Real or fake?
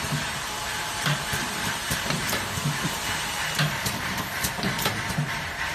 fake